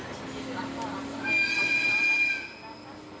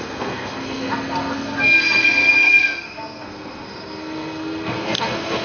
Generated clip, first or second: second